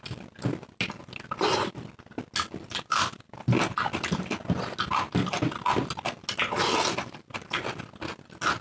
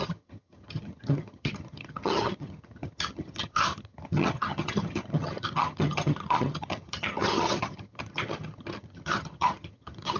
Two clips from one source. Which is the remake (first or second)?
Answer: second